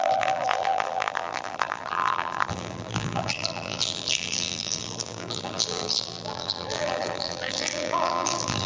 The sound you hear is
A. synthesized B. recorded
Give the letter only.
A